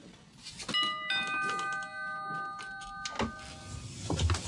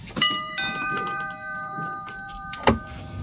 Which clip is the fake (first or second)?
second